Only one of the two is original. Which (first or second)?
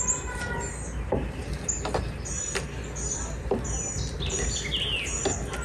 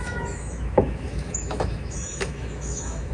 first